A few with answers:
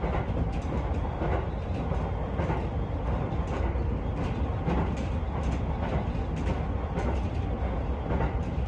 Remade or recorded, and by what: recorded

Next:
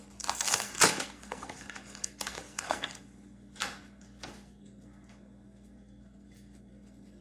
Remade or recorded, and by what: remade, codec, SNAC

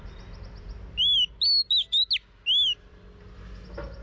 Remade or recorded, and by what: recorded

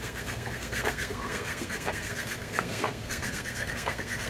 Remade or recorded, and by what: remade, codec, SNAC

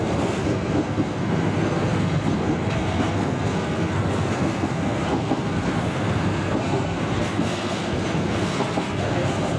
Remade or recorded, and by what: remade, codec, SNAC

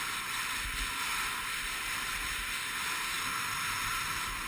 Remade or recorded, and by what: recorded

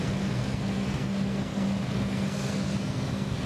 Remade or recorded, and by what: remade, codec, SNAC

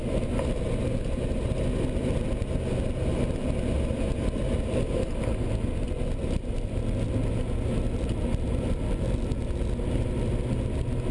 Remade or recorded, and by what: recorded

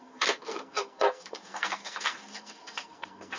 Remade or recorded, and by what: remade, codec, SNAC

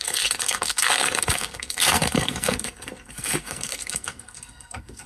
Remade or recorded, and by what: remade, codec, SNAC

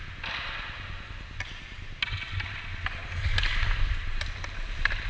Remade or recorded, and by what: recorded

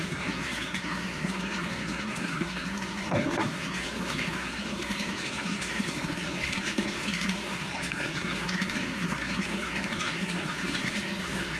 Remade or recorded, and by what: remade, codec, SNAC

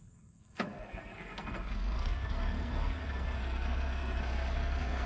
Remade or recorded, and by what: remade, codec, SNAC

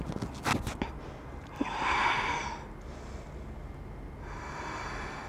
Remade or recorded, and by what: recorded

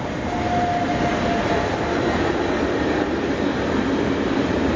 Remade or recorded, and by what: recorded